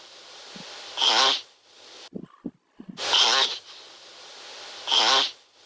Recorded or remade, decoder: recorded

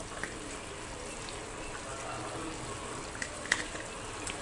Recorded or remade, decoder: recorded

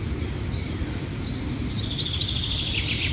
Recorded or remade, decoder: recorded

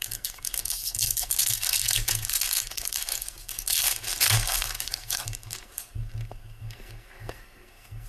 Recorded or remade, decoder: remade, codec, SNAC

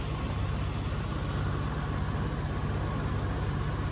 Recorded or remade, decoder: recorded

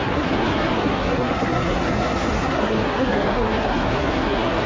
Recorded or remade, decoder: remade, codec, SNAC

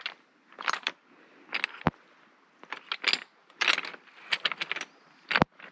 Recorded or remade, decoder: recorded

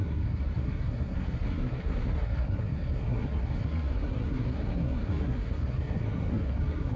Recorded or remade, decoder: remade, codec, SNAC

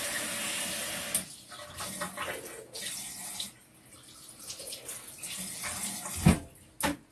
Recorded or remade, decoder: recorded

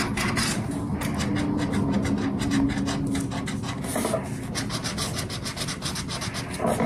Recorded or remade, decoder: recorded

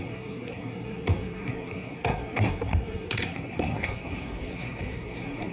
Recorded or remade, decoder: remade, codec, SNAC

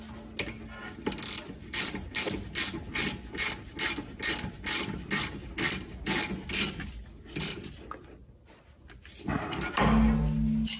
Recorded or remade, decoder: recorded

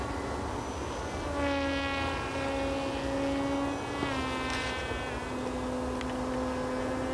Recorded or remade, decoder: recorded